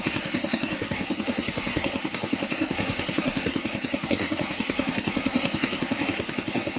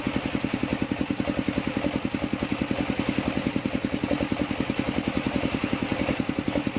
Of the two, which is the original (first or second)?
second